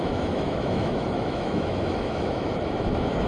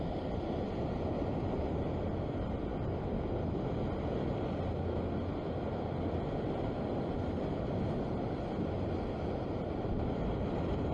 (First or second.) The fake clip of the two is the first